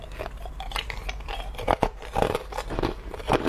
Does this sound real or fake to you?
fake